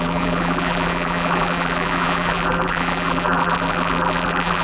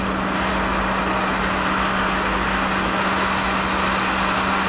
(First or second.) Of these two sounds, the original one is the second